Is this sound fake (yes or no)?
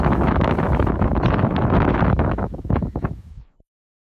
yes